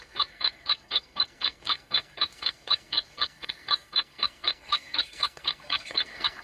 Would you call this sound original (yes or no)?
no